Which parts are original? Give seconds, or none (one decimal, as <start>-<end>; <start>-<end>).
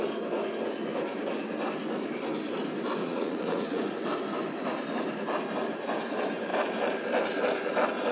0.0-3.0; 3.8-8.1